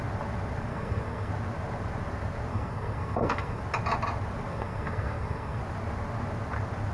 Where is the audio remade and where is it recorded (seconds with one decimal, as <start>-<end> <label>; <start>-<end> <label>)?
0.0-0.7 recorded; 0.7-1.3 remade; 1.3-2.5 recorded; 2.5-3.6 remade; 3.6-4.5 recorded; 4.5-5.6 remade; 5.6-6.9 recorded